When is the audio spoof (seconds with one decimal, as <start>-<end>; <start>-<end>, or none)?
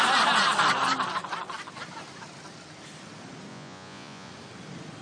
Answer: 3.5-4.3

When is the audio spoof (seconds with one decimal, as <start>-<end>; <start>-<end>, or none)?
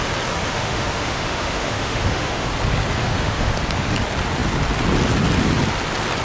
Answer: 0.5-2.5; 3.0-3.5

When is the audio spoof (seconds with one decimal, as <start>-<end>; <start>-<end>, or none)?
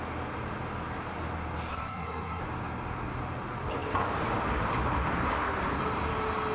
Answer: 1.7-2.4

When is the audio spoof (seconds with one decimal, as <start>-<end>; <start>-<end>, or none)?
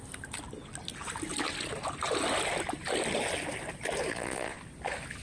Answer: 4.1-4.6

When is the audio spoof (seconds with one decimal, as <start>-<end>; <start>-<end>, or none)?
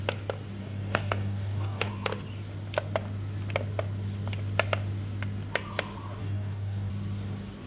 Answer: 0.6-1.9; 6.2-6.9